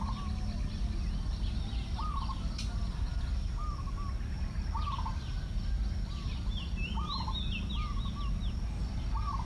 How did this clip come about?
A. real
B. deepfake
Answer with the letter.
A